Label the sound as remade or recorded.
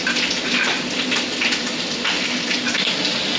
recorded